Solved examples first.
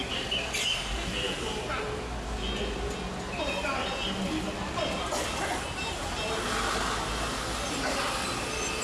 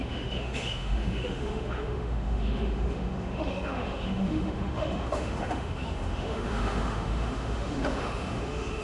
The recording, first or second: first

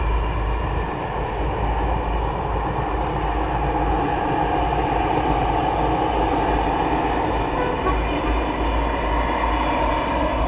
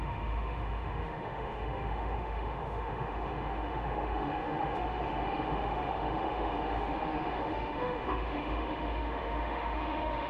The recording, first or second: first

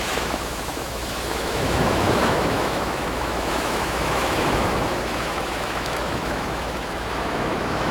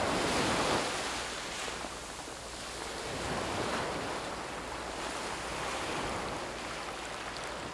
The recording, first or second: second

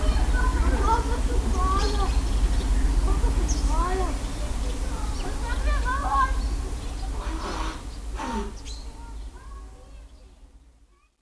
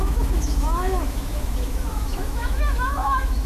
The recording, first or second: first